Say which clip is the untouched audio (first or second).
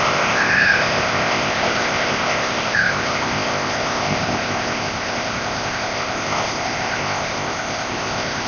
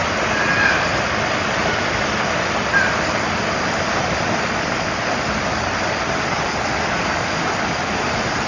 second